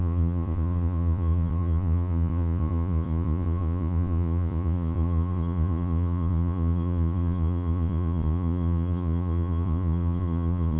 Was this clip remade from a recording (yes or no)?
yes